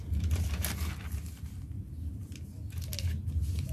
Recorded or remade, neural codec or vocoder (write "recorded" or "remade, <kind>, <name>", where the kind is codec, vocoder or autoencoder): recorded